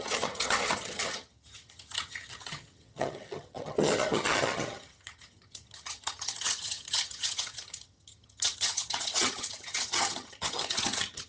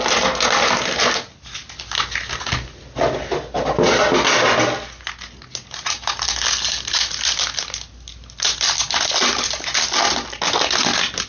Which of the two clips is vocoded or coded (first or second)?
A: first